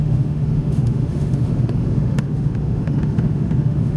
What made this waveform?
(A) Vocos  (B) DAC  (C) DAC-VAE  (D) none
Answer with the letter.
C